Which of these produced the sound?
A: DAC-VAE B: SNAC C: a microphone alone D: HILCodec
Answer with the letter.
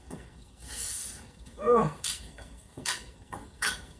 B